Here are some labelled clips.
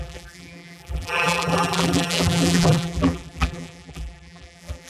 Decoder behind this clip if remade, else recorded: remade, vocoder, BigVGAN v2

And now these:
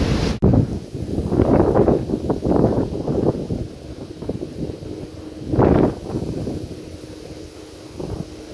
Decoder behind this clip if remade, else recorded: recorded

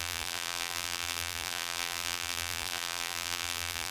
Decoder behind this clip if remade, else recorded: remade, vocoder, BigVGAN v2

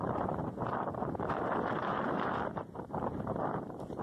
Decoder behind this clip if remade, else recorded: remade, vocoder, BigVGAN v2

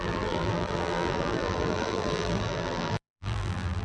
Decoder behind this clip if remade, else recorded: remade, vocoder, BigVGAN v2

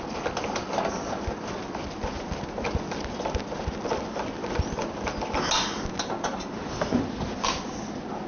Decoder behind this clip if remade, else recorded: recorded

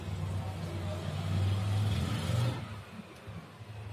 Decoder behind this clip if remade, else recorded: recorded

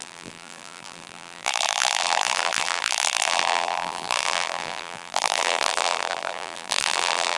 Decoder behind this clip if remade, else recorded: remade, vocoder, BigVGAN v2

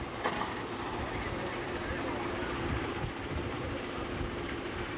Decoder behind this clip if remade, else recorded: remade, vocoder, BigVGAN v2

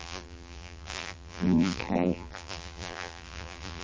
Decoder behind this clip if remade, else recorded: remade, vocoder, BigVGAN v2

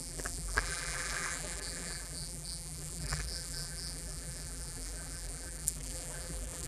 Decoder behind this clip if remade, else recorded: remade, vocoder, BigVGAN v2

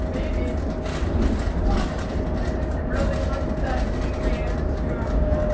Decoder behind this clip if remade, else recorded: recorded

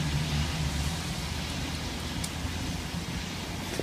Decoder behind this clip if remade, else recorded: recorded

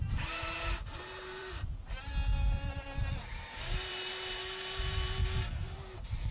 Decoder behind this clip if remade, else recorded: remade, vocoder, BigVGAN v2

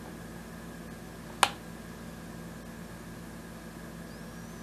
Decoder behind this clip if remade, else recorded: recorded